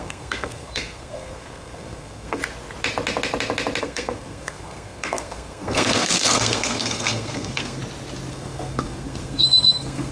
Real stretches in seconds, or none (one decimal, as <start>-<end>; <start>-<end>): 2.4-3.8; 7.8-8.3